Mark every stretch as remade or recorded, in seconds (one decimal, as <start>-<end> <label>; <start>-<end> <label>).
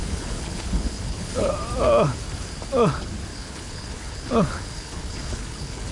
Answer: 0.0-1.5 remade; 1.5-3.3 recorded; 3.3-5.9 remade